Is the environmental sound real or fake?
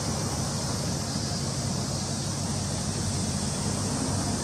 real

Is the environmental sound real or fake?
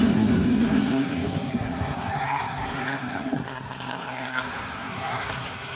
fake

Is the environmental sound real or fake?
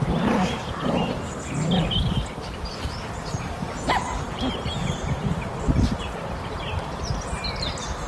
real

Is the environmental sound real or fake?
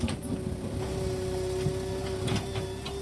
real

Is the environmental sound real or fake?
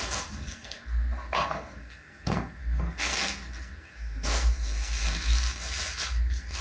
fake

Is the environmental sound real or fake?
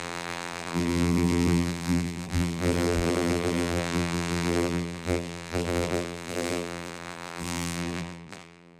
fake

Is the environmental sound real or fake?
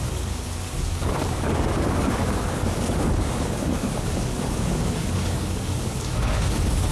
fake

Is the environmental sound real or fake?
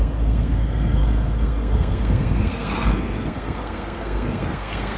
fake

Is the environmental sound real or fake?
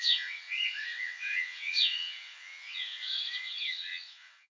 fake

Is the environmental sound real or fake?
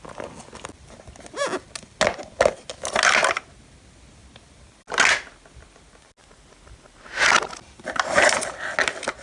real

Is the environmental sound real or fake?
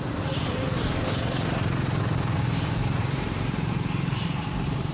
fake